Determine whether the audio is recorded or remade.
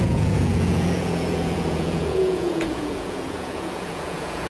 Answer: remade